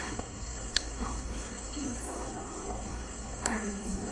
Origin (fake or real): fake